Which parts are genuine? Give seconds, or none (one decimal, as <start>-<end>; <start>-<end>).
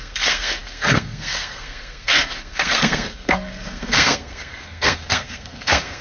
none